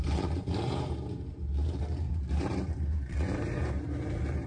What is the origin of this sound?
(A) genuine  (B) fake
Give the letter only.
B